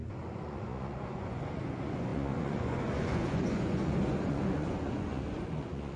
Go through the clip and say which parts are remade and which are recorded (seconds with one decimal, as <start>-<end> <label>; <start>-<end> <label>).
0.0-6.0 remade